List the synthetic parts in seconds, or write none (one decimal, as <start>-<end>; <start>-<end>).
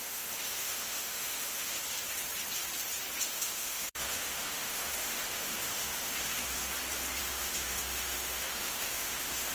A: 0.0-1.8; 3.2-6.6; 7.2-9.5